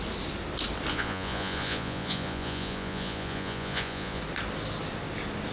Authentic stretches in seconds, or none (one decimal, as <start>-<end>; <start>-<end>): 0.0-0.9; 4.2-5.5